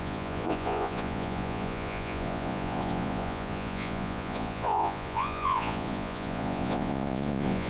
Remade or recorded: remade